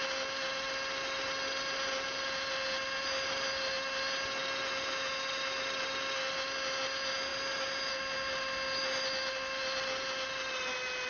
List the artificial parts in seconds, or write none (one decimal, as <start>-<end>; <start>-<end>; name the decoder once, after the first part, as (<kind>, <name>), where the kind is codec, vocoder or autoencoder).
none